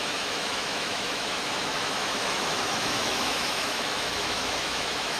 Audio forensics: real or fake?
fake